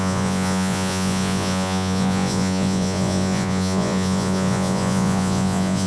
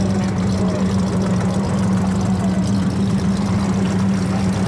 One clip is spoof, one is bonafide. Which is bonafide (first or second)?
second